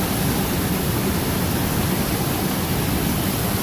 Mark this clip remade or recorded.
recorded